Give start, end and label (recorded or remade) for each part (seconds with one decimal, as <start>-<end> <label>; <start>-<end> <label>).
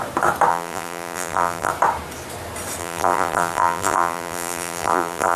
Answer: 0.0-0.5 recorded; 0.5-1.7 remade; 1.7-2.8 recorded; 2.8-5.4 remade